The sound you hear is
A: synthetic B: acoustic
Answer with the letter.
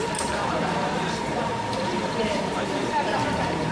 A